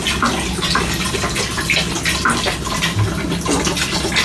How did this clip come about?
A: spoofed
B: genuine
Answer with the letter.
B